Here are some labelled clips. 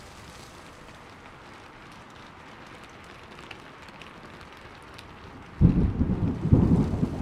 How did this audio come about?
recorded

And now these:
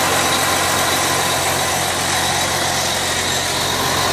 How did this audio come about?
recorded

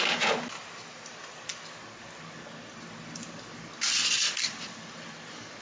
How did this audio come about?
recorded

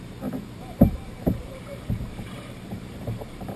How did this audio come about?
remade